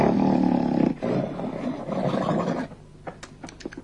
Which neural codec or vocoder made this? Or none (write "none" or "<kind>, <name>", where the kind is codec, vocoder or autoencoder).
none